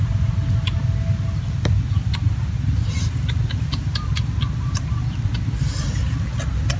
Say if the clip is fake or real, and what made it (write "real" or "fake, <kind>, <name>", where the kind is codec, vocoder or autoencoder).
real